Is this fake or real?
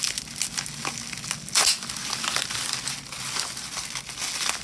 real